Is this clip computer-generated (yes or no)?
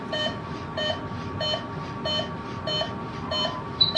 no